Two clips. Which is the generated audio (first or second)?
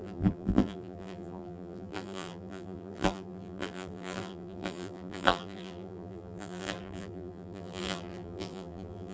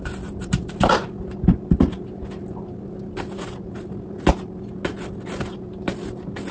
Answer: first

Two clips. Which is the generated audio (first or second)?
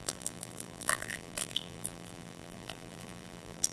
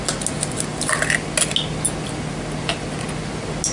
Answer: first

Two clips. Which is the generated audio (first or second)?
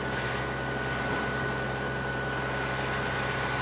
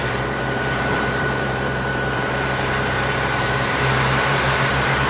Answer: second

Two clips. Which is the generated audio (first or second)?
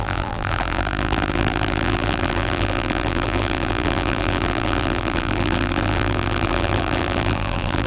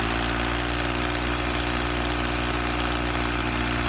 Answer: first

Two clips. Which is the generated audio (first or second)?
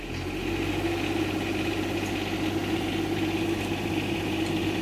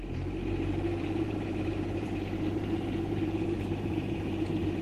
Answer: second